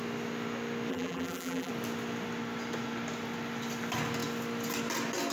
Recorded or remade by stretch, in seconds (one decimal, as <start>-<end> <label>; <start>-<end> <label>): 0.0-0.9 recorded; 0.9-1.7 remade; 1.7-5.3 recorded